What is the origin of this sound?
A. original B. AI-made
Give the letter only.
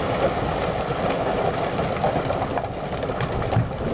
A